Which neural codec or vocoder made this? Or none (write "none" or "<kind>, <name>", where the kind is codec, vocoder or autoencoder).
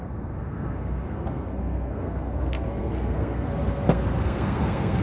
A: codec, SNAC